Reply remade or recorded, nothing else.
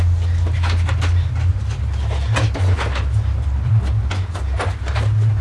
recorded